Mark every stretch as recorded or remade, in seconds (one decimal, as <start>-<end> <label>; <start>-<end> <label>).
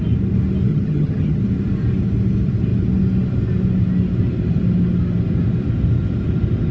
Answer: 0.0-0.7 recorded; 0.7-1.4 remade; 1.4-6.7 recorded